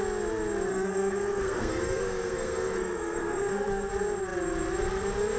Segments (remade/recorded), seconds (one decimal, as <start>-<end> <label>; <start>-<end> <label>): 0.0-0.7 recorded; 0.7-3.9 remade; 3.9-5.4 recorded